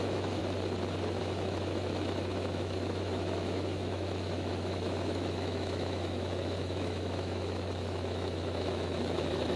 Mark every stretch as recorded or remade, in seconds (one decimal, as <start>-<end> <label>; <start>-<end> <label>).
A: 0.0-0.4 remade; 0.4-1.2 recorded; 1.2-9.6 remade